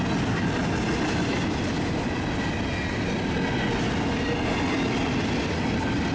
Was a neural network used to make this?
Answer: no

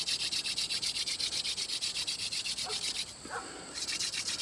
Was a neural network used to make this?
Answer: no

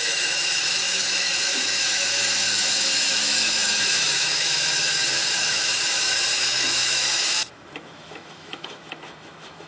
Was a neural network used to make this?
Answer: yes